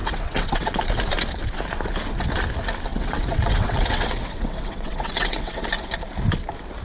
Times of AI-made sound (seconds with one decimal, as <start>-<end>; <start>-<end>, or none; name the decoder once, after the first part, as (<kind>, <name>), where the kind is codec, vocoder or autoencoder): 0.0-0.8 (vocoder, WaveNeXt); 2.9-5.7